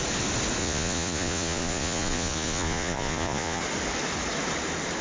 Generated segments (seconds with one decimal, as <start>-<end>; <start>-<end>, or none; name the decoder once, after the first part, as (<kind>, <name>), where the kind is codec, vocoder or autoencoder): 0.6-3.6 (vocoder, Vocos)